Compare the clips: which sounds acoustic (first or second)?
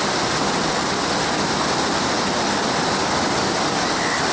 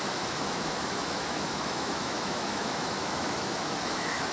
first